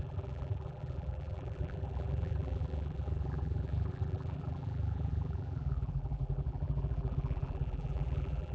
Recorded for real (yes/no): no